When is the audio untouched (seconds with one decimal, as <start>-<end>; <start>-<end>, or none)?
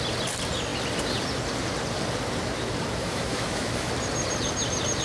0.0-3.0; 3.9-5.0